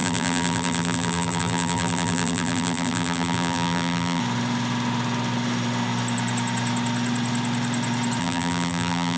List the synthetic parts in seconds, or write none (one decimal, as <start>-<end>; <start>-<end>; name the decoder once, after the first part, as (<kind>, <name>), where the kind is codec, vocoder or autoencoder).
0.0-4.2 (vocoder, BigVGAN v2); 8.2-9.2